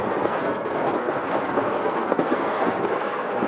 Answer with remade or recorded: remade